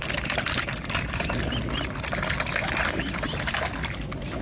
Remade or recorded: recorded